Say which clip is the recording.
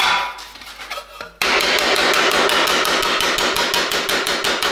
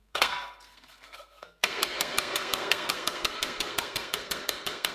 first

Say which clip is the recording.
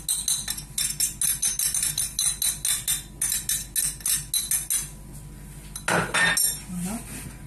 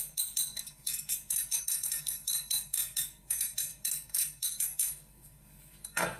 first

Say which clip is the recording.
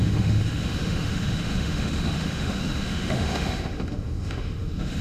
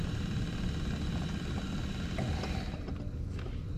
second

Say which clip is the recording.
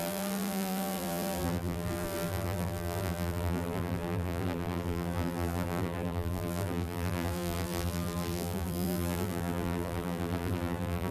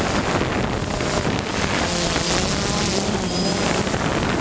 second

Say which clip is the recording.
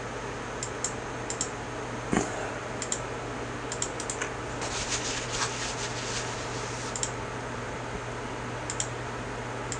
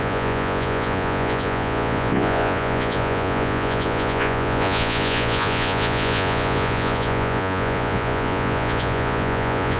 first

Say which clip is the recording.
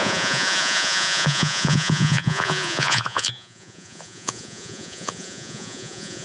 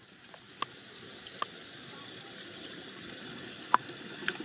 second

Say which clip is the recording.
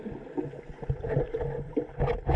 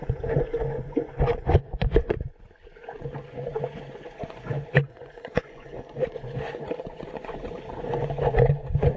first